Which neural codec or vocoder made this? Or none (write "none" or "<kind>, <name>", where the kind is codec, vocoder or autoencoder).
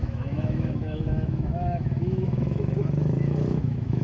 autoencoder, DAC-VAE